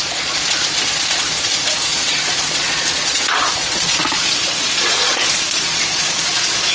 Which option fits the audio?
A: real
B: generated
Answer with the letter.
B